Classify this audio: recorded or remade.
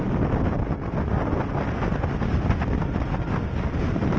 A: recorded